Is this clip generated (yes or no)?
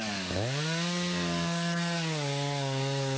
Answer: yes